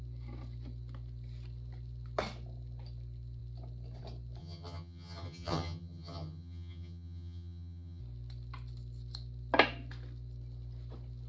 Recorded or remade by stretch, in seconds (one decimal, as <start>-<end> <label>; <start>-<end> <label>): 0.0-4.4 recorded; 4.4-8.0 remade; 8.0-11.3 recorded

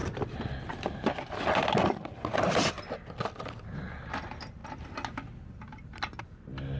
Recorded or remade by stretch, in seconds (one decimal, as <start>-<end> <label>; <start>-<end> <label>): 0.0-6.8 remade

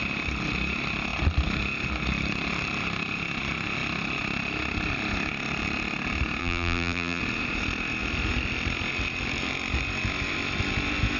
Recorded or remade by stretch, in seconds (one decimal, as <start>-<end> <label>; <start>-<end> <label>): 0.0-6.4 recorded; 6.4-7.2 remade; 7.2-11.2 recorded